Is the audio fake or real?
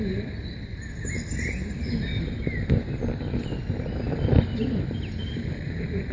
real